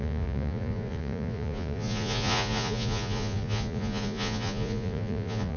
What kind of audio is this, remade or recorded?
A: remade